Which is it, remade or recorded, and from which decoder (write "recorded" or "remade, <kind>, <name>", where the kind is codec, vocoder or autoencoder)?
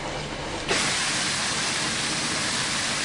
recorded